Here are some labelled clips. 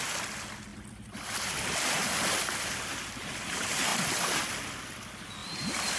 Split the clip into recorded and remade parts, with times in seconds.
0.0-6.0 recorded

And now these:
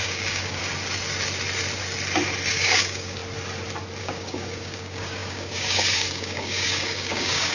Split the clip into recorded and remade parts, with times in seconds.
0.0-0.6 remade; 0.6-2.5 recorded; 2.5-3.2 remade; 3.2-4.0 recorded; 4.0-7.5 remade

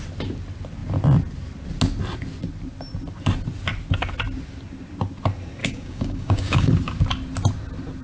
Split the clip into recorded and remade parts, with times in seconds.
0.0-5.6 recorded; 5.6-6.7 remade; 6.7-8.0 recorded

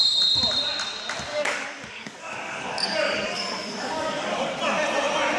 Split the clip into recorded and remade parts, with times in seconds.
0.0-1.3 recorded; 1.3-4.5 remade; 4.5-5.4 recorded

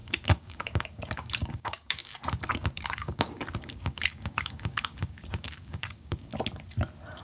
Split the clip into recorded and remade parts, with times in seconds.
0.0-6.3 remade; 6.3-7.2 recorded

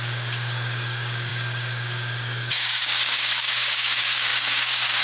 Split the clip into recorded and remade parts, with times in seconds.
0.0-5.0 remade

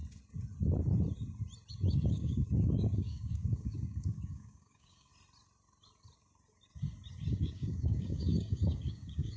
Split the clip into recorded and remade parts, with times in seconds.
0.0-1.7 recorded; 1.7-5.1 remade; 5.1-7.3 recorded; 7.3-9.4 remade

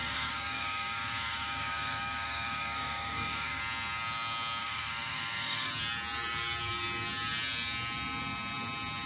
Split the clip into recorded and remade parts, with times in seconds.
0.0-3.6 remade; 3.6-4.6 recorded; 4.6-5.7 remade; 5.7-9.1 recorded